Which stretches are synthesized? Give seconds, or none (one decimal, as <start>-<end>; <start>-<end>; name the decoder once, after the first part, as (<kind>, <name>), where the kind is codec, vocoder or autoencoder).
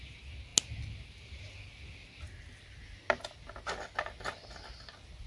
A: none